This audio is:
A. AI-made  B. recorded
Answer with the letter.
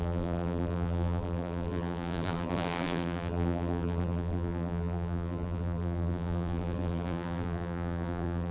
A